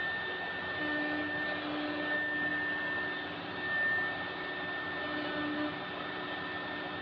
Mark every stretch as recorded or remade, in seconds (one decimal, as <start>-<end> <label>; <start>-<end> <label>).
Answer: 0.0-7.0 recorded